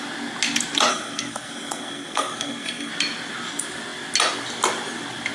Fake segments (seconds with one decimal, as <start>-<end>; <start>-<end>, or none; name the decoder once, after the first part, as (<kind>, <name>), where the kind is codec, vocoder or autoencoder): 0.9-2.9 (codec, SNAC)